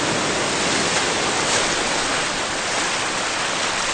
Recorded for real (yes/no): yes